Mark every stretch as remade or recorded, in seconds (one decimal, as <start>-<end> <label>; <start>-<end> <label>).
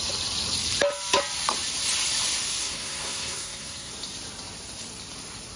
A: 0.0-2.6 recorded; 2.6-3.9 remade; 3.9-5.6 recorded